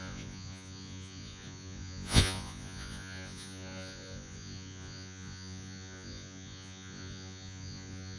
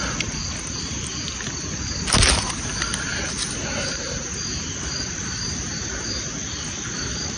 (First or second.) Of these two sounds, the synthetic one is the first